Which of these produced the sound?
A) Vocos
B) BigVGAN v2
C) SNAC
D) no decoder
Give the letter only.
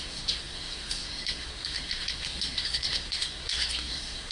C